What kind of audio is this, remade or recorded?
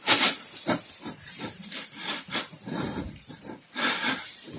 remade